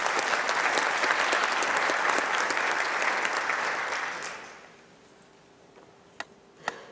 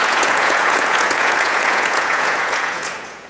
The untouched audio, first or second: first